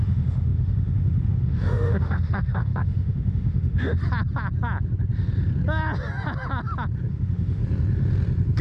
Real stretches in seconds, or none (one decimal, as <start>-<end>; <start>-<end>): 4.0-7.1; 7.6-8.6